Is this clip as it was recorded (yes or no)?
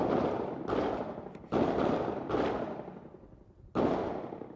yes